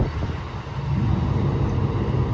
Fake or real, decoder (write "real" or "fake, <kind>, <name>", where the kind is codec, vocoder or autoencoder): real